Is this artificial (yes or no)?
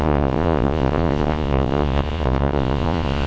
yes